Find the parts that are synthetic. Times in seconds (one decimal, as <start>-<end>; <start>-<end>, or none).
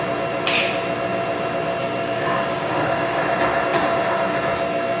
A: 1.8-3.2